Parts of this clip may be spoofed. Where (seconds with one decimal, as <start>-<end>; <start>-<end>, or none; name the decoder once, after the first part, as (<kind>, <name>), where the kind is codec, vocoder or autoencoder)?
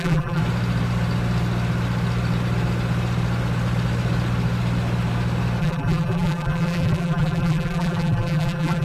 0.0-0.4 (vocoder, BigVGAN v2); 5.6-8.8